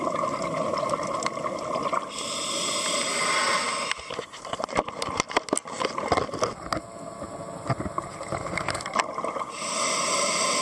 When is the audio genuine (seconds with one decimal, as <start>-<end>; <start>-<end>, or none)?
0.0-10.6